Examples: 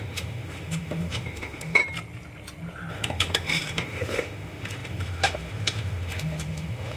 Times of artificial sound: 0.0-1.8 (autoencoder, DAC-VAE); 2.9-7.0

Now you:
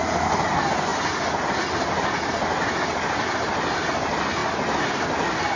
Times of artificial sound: none

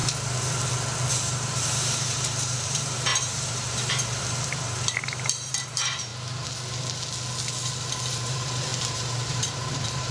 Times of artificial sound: 1.1-6.1 (vocoder, BigVGAN v2); 8.1-10.1

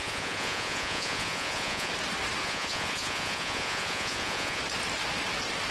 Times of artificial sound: 0.0-1.9 (vocoder, Vocos); 2.4-4.6